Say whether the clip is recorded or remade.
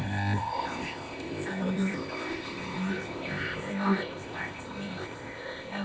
remade